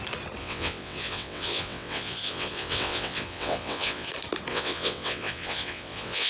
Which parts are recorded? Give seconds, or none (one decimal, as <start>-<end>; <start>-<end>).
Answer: 0.0-0.4; 4.1-4.5